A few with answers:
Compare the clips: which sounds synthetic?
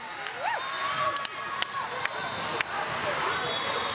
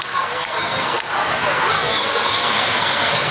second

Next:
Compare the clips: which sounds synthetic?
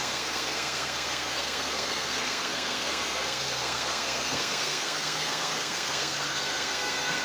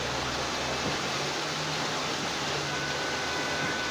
first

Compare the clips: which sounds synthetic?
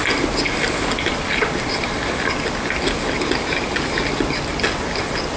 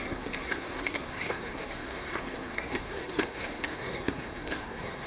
second